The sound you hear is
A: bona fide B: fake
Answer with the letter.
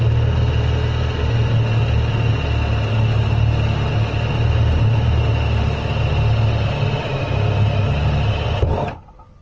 A